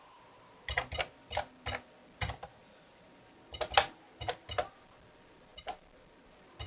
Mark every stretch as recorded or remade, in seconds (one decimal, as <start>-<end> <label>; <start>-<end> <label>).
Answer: 0.0-2.6 recorded; 2.6-4.1 remade; 4.1-5.5 recorded; 5.5-6.1 remade; 6.1-6.7 recorded